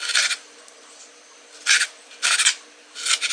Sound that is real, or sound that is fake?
real